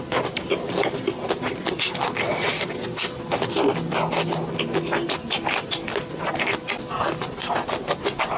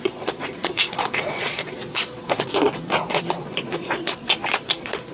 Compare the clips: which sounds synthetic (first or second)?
second